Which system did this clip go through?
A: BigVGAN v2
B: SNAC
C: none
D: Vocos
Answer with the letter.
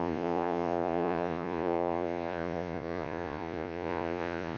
D